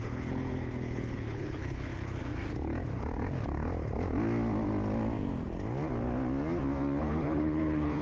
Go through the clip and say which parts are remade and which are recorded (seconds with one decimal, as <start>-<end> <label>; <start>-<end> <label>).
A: 0.0-2.2 remade; 2.2-7.0 recorded; 7.0-8.0 remade